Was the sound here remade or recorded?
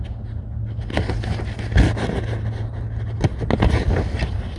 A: recorded